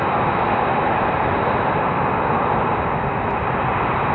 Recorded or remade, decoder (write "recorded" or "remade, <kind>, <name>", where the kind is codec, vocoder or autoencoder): recorded